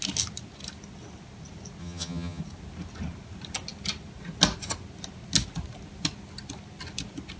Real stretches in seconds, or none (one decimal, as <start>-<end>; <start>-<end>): 0.0-1.8; 2.4-7.4